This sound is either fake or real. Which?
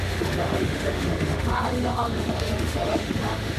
fake